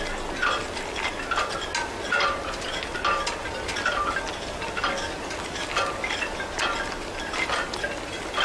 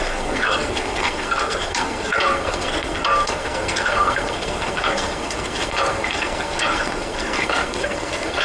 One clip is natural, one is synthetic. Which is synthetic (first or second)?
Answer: second